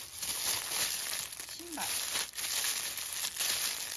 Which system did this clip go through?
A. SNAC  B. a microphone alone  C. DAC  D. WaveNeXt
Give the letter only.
B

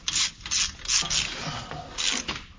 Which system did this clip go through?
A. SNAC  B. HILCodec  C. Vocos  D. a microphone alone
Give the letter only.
D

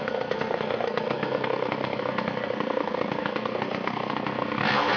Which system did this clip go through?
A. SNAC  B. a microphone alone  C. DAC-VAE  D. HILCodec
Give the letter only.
A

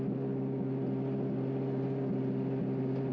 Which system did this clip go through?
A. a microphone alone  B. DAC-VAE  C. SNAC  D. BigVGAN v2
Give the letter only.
A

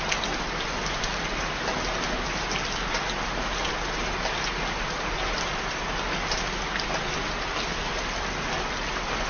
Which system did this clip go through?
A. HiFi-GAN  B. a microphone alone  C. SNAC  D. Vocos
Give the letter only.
B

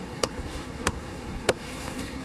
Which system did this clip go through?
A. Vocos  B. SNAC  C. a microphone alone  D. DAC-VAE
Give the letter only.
B